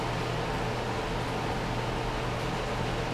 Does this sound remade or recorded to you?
recorded